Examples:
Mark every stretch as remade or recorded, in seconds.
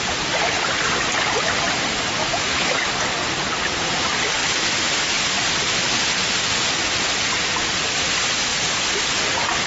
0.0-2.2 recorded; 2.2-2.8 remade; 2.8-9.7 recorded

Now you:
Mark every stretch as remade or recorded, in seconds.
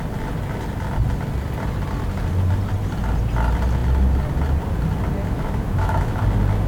0.0-5.2 recorded; 5.2-6.2 remade; 6.2-6.7 recorded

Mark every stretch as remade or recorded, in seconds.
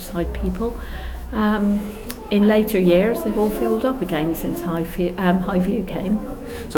0.0-6.8 remade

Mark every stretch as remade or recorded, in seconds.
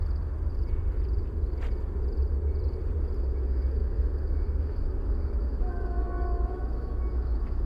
0.0-3.2 recorded; 3.2-7.7 remade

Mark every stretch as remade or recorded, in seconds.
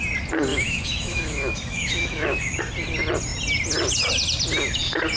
0.0-0.5 recorded; 0.5-2.6 remade; 2.6-5.2 recorded